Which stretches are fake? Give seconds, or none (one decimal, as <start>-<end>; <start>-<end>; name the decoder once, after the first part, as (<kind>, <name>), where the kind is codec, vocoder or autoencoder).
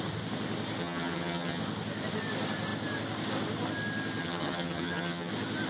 0.8-1.6 (vocoder, HiFi-GAN); 4.2-5.3